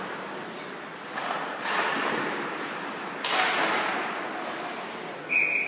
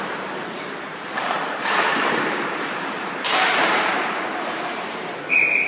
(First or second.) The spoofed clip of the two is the second